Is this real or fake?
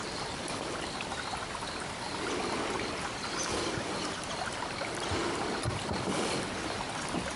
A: fake